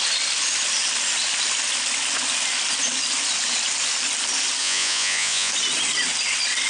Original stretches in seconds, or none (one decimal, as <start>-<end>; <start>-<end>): 0.0-4.6; 5.5-6.7